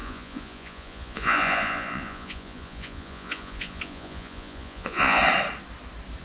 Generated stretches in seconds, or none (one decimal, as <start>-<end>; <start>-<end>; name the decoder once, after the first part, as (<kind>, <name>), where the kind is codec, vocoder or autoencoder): 0.0-5.2 (vocoder, Vocos)